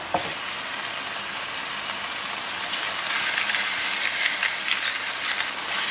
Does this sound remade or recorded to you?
recorded